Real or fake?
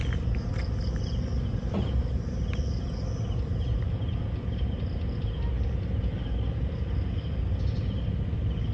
real